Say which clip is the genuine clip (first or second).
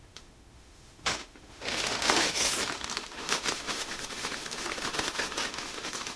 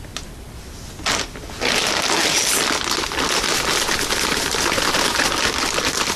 second